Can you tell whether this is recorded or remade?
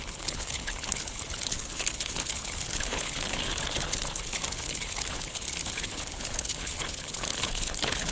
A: remade